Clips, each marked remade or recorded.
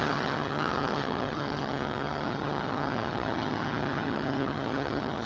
remade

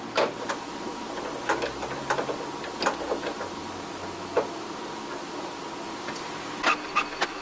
recorded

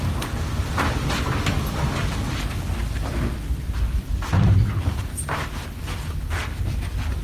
recorded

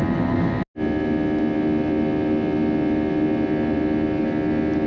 recorded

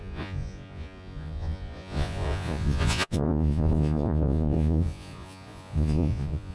remade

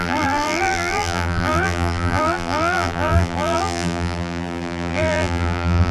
remade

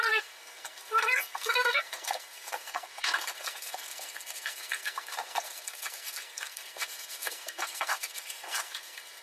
remade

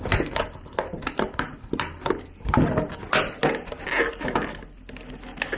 recorded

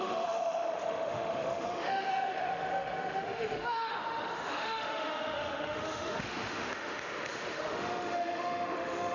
remade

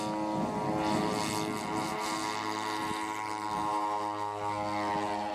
recorded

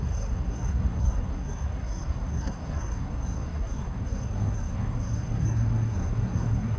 remade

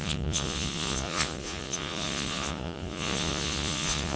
remade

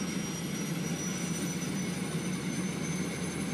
recorded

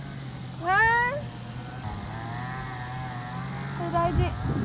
recorded